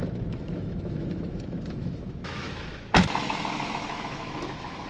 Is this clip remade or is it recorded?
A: remade